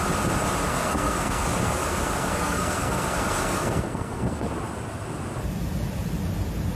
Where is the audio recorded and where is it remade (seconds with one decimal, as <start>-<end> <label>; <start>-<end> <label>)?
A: 0.0-0.7 recorded; 0.7-4.5 remade; 4.5-6.8 recorded